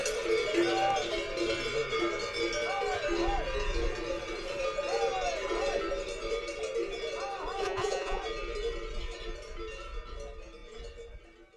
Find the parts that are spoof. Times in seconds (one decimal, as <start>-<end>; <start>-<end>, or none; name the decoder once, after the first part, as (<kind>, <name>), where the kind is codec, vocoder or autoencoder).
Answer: 7.6-8.2 (vocoder, Vocos)